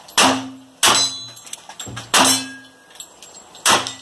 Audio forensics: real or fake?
real